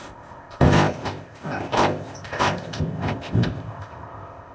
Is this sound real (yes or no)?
no